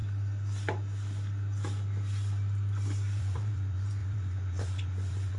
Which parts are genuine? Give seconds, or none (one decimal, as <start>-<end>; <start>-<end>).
0.0-3.2

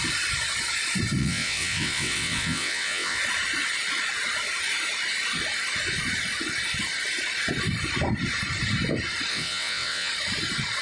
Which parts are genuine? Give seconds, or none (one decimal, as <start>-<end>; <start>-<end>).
0.0-1.2; 3.2-9.3; 10.1-10.8